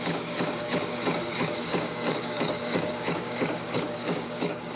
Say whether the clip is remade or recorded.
remade